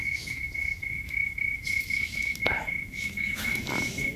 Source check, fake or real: fake